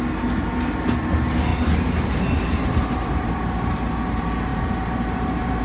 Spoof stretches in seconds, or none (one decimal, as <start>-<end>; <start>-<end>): 1.5-4.0; 4.5-5.6